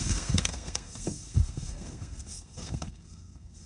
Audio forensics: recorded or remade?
remade